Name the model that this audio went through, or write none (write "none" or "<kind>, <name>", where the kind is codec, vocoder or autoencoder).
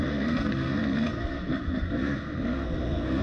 codec, SNAC